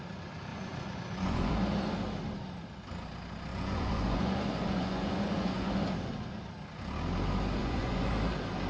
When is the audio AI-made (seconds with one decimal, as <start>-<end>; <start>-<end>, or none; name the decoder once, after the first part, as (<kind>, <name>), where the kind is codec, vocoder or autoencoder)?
0.5-1.5 (vocoder, Vocos); 3.5-5.8; 7.6-8.1